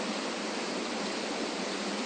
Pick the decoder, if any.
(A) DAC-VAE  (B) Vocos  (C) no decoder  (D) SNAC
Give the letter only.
C